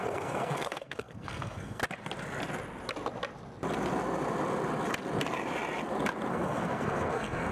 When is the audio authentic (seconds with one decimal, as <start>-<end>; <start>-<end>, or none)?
1.8-6.3